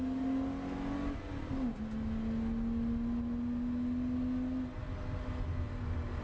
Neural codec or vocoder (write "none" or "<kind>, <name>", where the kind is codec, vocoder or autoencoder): none